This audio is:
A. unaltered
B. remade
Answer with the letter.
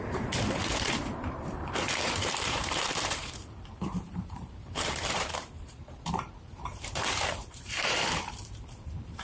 B